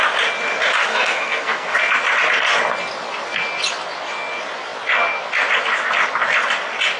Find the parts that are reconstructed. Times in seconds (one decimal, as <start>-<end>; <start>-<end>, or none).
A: 0.9-1.8